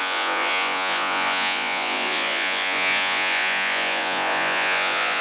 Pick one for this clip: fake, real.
fake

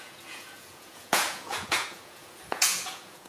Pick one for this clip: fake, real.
fake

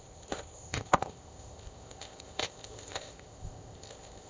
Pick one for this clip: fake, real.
fake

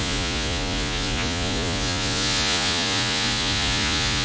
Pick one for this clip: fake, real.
fake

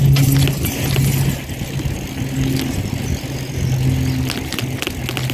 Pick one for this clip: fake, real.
real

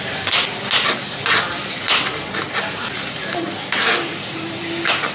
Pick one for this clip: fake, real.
real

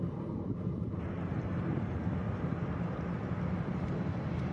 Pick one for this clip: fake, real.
real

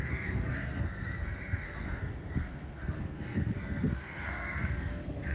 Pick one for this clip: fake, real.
fake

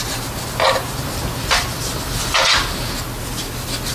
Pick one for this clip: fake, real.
real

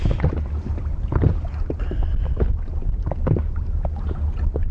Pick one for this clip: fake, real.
real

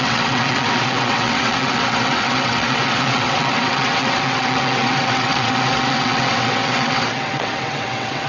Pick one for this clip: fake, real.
fake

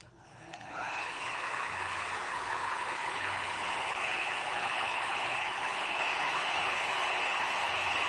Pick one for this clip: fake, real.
fake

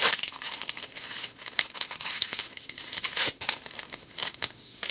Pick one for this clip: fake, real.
fake